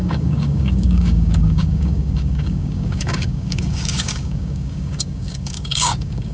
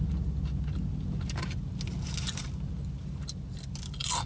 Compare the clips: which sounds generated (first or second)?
first